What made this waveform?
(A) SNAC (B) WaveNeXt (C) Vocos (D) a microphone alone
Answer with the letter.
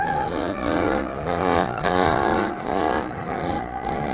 C